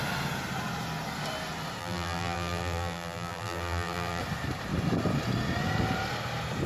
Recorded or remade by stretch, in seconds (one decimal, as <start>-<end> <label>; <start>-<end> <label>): 0.0-1.8 recorded; 1.8-4.2 remade; 4.2-6.7 recorded